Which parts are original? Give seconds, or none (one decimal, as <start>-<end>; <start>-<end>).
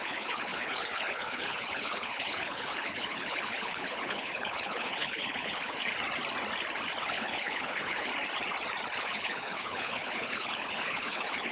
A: 5.9-7.0; 8.1-9.0